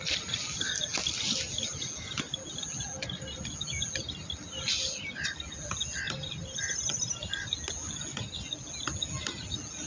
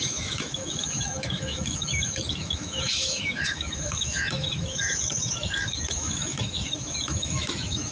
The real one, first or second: first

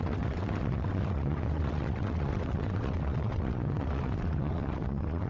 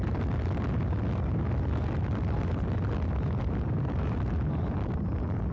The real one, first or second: second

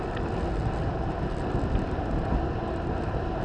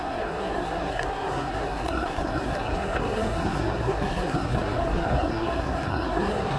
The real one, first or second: first